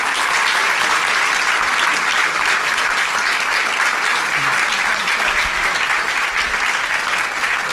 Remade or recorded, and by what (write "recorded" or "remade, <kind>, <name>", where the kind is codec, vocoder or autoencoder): recorded